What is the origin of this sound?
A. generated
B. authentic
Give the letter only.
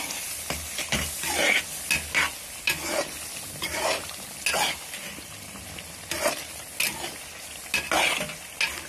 B